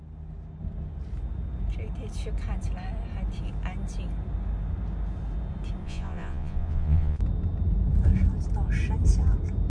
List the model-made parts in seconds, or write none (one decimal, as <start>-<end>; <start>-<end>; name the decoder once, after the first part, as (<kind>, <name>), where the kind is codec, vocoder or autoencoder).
5.8-7.2 (vocoder, Vocos)